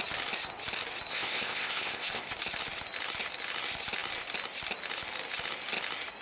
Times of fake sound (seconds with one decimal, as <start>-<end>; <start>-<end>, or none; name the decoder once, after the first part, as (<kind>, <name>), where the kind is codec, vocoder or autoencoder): 1.1-2.3 (codec, ZipCodec)